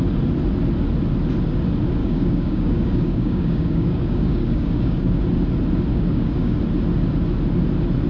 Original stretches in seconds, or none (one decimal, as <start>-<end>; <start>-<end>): 0.0-2.0; 5.2-5.9; 6.6-8.1